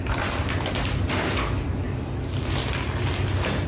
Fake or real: real